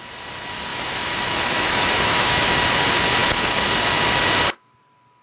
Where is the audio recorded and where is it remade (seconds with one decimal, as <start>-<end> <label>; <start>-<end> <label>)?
0.0-0.7 recorded; 0.7-2.6 remade; 2.6-5.2 recorded